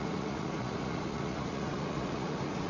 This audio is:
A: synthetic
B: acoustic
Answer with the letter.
A